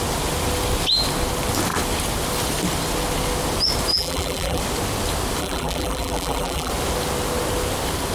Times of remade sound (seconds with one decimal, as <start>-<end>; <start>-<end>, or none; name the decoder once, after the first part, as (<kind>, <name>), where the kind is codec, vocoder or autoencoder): 3.9-4.6 (vocoder, BigVGAN v2); 5.4-6.7